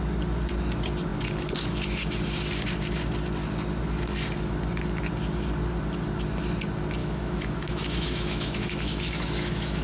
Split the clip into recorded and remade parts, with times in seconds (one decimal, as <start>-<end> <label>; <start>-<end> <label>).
0.0-7.0 recorded; 7.0-9.8 remade